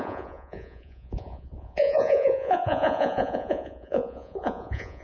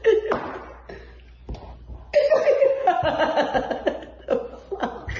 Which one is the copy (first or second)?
first